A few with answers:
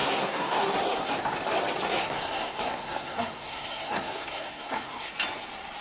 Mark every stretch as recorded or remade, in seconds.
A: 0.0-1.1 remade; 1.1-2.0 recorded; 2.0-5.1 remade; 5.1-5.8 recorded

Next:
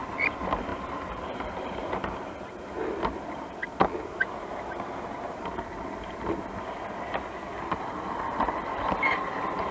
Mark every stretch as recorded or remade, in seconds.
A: 0.0-9.7 recorded

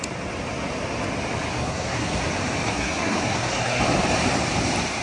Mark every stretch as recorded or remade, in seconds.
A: 0.0-1.5 recorded; 1.5-2.2 remade; 2.2-2.7 recorded; 2.7-3.8 remade; 3.8-5.0 recorded

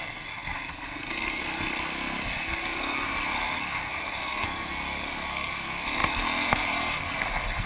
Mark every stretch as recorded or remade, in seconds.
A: 0.0-7.7 remade

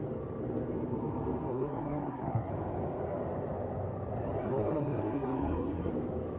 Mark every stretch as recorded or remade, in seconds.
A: 0.0-1.5 recorded; 1.5-2.5 remade; 2.5-4.4 recorded; 4.4-5.9 remade; 5.9-6.4 recorded

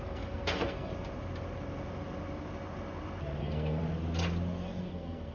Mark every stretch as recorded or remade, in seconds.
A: 0.0-0.9 remade; 0.9-3.4 recorded; 3.4-3.8 remade; 3.8-4.8 recorded; 4.8-5.3 remade

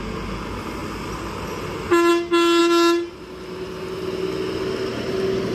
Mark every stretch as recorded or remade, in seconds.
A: 0.0-5.5 recorded

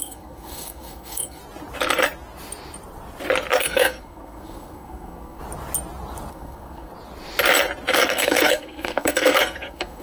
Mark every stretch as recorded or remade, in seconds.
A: 0.0-1.4 remade; 1.4-3.6 recorded; 3.6-5.4 remade; 5.4-6.3 recorded; 6.3-6.9 remade; 6.9-7.9 recorded; 7.9-10.0 remade